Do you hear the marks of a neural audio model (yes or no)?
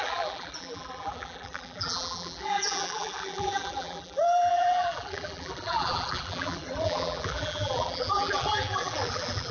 yes